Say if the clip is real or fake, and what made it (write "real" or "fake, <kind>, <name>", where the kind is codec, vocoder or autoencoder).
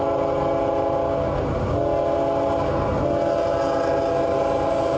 real